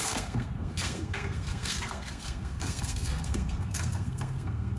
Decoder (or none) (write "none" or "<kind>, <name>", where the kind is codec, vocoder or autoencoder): codec, SNAC